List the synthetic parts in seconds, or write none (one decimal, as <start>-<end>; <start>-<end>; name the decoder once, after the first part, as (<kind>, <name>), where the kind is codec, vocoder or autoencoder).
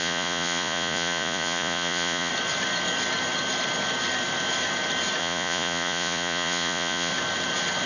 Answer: 0.0-2.3 (vocoder, Vocos); 5.2-7.1